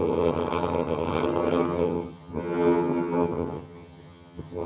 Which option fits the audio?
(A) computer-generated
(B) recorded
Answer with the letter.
A